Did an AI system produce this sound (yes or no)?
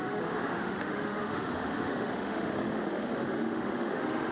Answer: yes